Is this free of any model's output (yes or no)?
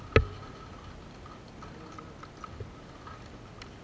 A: yes